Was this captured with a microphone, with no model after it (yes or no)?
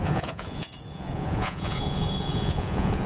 no